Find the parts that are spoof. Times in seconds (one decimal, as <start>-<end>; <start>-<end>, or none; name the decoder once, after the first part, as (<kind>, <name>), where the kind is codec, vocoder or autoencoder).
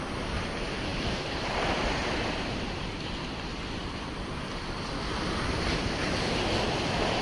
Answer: none